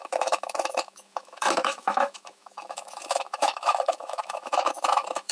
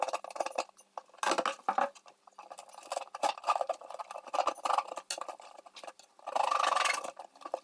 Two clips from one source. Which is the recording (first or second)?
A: second